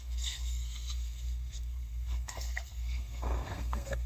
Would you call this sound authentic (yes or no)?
no